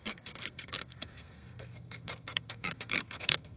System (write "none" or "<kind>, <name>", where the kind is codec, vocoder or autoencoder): codec, SNAC